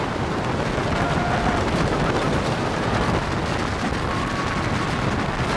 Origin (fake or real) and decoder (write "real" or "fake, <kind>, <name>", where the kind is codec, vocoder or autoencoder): real